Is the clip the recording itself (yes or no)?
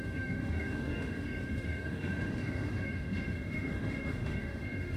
no